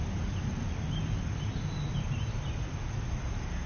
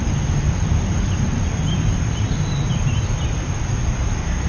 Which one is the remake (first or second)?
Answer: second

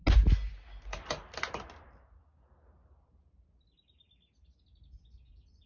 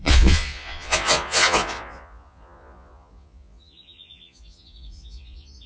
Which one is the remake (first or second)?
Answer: second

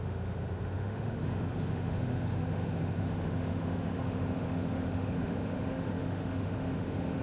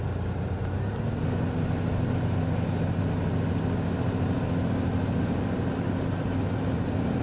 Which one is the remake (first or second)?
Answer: first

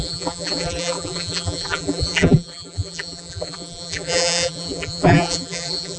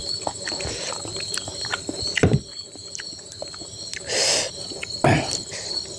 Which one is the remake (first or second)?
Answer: first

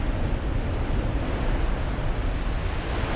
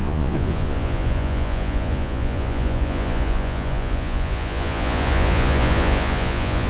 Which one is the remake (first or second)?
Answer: second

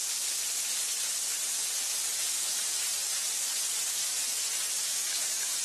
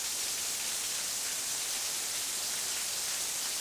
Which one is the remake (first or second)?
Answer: first